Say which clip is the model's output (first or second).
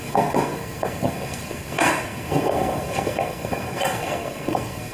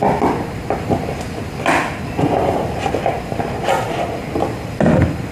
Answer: first